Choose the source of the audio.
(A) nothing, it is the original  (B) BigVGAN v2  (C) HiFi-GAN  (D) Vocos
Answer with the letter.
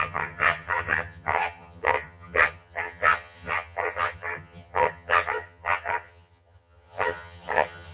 C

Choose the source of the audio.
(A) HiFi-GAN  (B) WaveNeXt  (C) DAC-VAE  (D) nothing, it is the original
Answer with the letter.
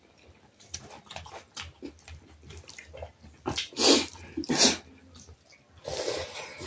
D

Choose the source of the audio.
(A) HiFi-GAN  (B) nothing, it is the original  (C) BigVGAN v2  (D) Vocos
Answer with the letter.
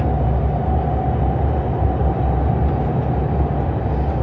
B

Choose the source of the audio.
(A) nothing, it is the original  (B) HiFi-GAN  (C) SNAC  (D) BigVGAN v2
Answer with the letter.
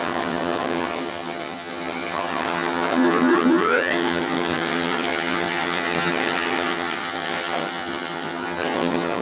B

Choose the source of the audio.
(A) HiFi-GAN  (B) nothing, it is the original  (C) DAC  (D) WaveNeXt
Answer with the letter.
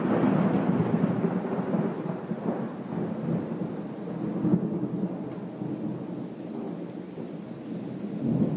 B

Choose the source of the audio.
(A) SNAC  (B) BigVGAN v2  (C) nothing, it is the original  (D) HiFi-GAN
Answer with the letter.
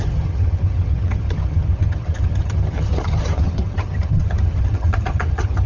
D